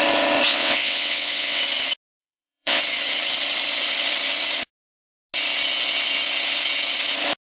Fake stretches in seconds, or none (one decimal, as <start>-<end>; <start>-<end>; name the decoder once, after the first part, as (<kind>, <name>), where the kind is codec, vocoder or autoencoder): 0.5-1.6 (vocoder, WaveNeXt); 2.2-2.8